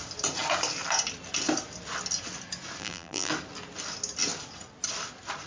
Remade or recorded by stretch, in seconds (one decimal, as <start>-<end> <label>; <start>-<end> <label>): 0.0-2.8 recorded; 2.8-3.3 remade; 3.3-5.5 recorded